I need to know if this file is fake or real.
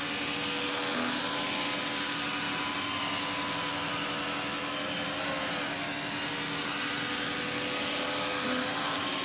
real